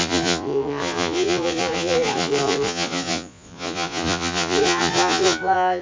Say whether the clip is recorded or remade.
remade